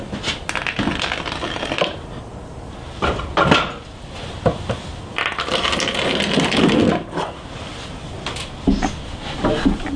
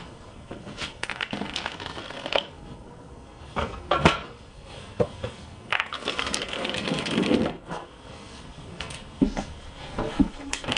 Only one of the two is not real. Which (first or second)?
second